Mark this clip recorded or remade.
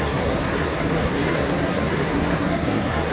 remade